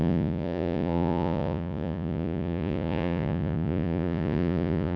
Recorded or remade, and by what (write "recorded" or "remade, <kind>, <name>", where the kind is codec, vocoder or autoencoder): remade, vocoder, Vocos